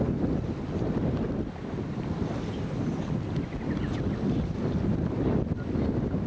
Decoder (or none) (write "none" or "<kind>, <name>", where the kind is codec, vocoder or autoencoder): none